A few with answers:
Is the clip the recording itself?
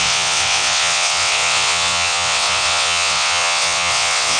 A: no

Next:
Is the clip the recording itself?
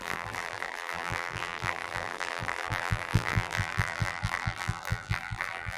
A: no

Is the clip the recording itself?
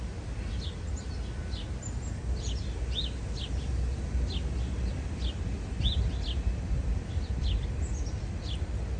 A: yes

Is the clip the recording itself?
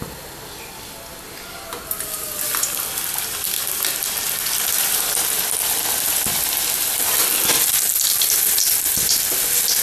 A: yes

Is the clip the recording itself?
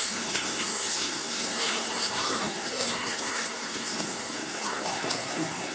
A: no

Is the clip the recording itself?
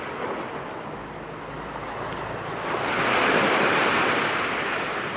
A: yes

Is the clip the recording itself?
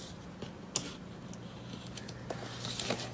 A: yes